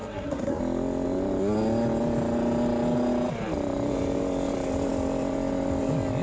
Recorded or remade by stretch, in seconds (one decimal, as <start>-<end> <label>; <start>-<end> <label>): 0.0-0.6 remade; 0.6-6.2 recorded